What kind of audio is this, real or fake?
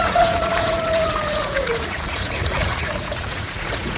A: fake